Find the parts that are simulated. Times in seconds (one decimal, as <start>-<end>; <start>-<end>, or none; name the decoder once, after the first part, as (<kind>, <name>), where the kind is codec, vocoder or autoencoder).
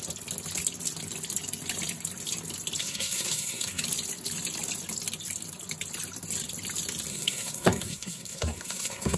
2.8-3.8 (codec, SNAC); 7.1-9.2